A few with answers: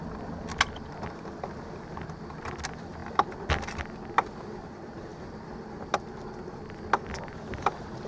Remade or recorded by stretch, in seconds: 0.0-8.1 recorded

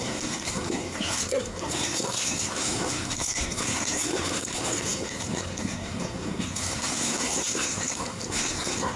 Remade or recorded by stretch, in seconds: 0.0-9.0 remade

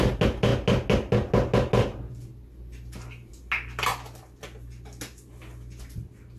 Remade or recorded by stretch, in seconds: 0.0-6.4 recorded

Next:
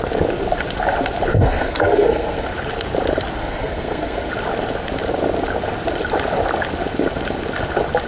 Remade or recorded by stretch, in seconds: 0.0-1.3 recorded; 1.3-2.5 remade; 2.5-3.4 recorded; 3.4-4.3 remade; 4.3-8.1 recorded

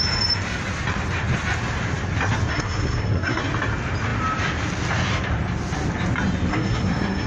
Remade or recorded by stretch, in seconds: 0.0-2.5 recorded; 2.5-3.4 remade; 3.4-6.5 recorded; 6.5-7.3 remade

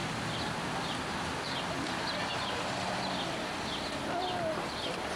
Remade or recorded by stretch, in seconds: 0.0-5.2 recorded

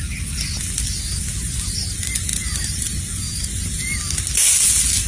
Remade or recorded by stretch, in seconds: 0.0-5.1 recorded

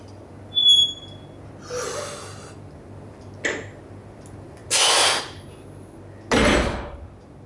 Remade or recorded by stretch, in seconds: 0.0-7.5 recorded